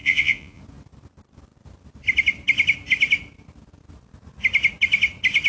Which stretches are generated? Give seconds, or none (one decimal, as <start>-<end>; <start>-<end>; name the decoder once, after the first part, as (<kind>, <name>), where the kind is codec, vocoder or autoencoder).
0.0-0.6 (vocoder, Vocos)